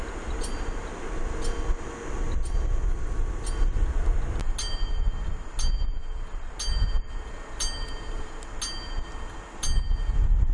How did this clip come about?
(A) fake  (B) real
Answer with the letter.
B